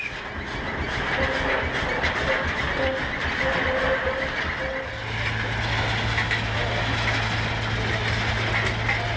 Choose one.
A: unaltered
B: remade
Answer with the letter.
A